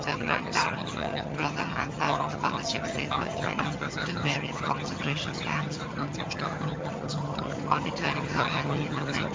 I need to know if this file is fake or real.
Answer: fake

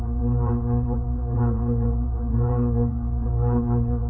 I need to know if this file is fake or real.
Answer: fake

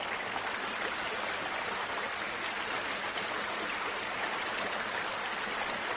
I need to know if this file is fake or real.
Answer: real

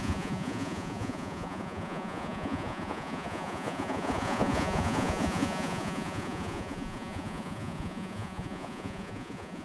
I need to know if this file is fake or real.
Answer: fake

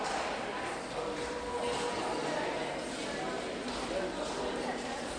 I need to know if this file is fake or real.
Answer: real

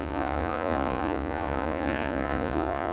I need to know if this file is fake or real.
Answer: fake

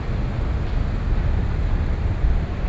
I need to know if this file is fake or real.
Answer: real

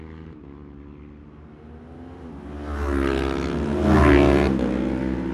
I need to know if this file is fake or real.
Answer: real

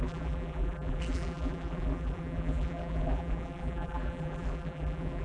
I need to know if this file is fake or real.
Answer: fake